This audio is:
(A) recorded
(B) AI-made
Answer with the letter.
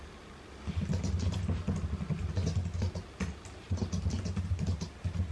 A